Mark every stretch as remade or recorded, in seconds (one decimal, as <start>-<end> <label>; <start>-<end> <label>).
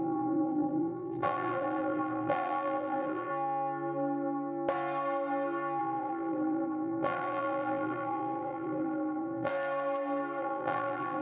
0.0-3.3 remade; 3.3-5.8 recorded; 5.8-9.5 remade; 9.5-10.4 recorded; 10.4-11.2 remade